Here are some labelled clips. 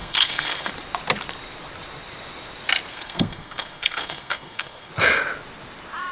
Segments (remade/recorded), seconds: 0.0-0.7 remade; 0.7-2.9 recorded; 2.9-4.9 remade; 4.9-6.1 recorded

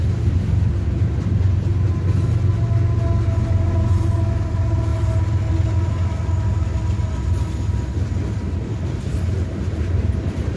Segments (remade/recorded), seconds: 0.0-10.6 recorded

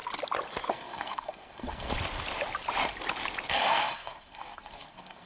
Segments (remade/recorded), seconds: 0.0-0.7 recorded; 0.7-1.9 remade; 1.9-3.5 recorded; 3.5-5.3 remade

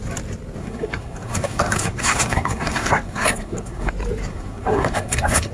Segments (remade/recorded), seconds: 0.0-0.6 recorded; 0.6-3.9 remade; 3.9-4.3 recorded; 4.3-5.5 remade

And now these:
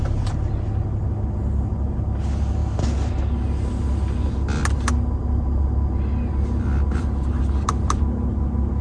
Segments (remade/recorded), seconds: 0.0-8.8 recorded